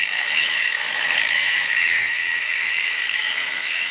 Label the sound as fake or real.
fake